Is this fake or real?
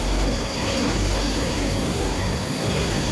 fake